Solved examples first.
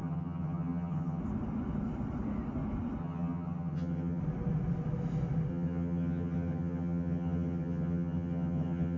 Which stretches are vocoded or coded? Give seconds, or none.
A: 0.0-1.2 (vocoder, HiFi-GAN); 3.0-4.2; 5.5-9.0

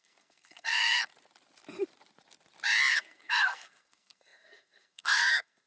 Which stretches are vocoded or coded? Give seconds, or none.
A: 0.0-1.1 (codec, SNAC); 2.9-5.7